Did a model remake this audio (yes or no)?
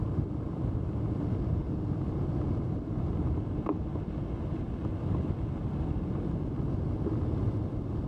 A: no